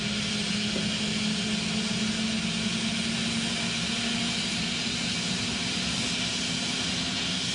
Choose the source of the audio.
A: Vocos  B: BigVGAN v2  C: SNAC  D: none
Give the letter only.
D